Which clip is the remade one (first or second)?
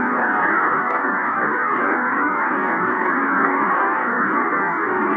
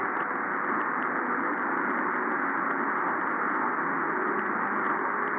first